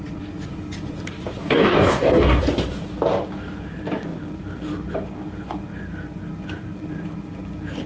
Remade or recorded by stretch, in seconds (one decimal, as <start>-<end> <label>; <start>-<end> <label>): 0.0-1.4 recorded; 1.4-2.4 remade; 2.4-7.9 recorded